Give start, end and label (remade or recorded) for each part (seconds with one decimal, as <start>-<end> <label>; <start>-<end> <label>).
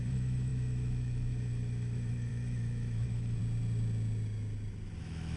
0.0-3.4 remade; 3.4-5.0 recorded; 5.0-5.4 remade